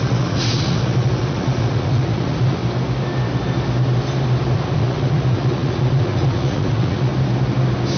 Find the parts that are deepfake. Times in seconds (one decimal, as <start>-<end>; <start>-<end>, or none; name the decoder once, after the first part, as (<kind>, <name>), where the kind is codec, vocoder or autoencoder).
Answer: 0.0-2.6 (vocoder, Vocos); 4.5-7.1